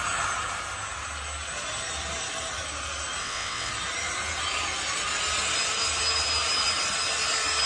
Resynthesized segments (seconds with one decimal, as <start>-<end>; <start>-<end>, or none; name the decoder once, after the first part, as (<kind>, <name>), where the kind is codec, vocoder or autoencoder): 3.2-3.7 (vocoder, WaveNeXt)